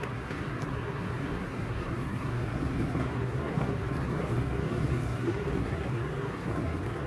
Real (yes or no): no